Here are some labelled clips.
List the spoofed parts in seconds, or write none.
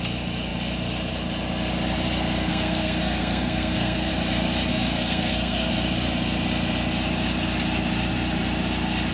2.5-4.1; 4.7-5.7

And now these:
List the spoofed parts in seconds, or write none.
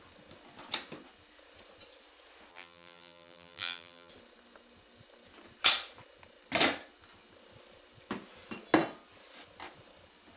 2.5-4.1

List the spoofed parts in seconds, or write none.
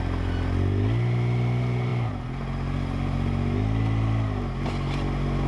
none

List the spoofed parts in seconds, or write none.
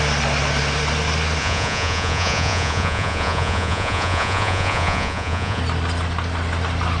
1.4-5.6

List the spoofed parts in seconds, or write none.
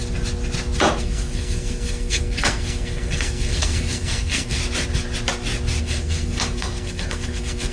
1.0-4.6; 5.8-7.7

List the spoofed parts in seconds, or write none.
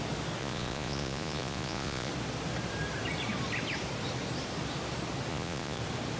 0.4-2.1; 5.3-5.8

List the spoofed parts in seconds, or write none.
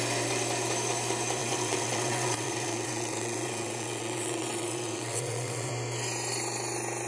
1.4-5.7